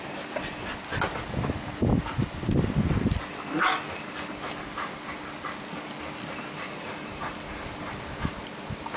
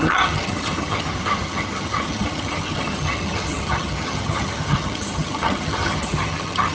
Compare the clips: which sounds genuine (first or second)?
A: first